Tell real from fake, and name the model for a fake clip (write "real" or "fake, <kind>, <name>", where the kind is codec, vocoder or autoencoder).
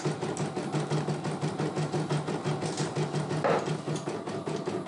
real